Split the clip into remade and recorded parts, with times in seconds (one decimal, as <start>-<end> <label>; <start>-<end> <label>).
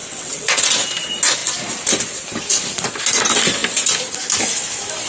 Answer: 0.0-0.7 remade; 0.7-5.1 recorded